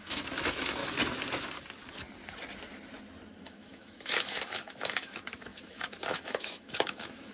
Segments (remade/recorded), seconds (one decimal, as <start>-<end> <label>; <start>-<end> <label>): 0.0-0.8 remade; 0.8-3.4 recorded; 3.4-7.3 remade